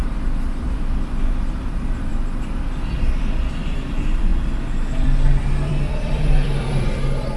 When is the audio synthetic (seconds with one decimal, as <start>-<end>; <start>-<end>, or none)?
0.0-2.1; 2.9-4.3; 5.0-7.4